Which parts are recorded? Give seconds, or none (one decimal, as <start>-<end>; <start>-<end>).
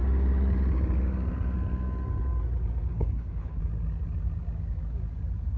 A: 0.0-2.9; 3.6-5.6